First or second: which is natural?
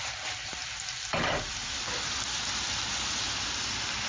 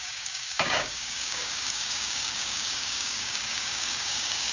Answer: first